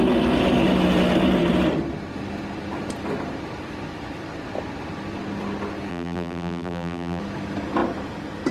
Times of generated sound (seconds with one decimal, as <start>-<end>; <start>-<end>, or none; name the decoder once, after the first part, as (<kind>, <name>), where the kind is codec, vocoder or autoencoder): 5.9-7.2 (vocoder, BigVGAN v2)

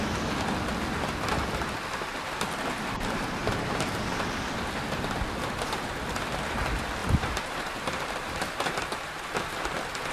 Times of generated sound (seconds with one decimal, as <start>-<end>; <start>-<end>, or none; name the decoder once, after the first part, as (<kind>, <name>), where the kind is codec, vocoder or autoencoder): 3.4-4.2 (vocoder, BigVGAN v2); 7.0-9.3